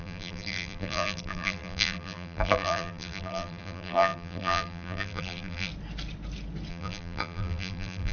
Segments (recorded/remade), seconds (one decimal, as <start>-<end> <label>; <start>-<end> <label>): 0.0-5.7 remade; 5.7-6.7 recorded; 6.7-8.1 remade